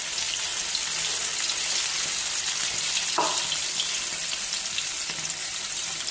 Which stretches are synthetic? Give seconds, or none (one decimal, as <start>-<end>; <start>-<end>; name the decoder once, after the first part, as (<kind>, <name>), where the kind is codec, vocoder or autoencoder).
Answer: 5.4-6.1 (vocoder, BigVGAN v2)